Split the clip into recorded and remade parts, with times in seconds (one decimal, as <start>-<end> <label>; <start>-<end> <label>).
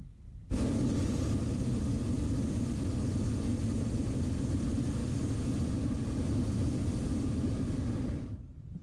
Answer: 0.0-8.8 recorded